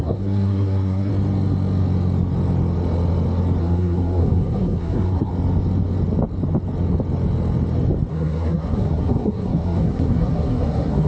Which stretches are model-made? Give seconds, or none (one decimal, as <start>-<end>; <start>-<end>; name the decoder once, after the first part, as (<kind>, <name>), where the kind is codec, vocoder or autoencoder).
0.0-1.1 (codec, SNAC); 3.6-5.3; 8.1-11.1